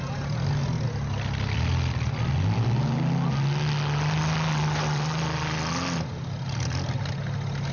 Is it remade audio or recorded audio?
recorded